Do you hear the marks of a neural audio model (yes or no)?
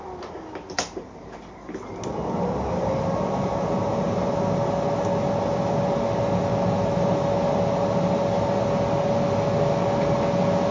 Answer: no